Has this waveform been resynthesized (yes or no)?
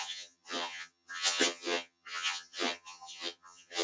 yes